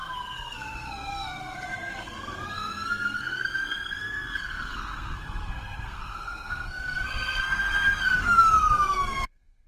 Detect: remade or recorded remade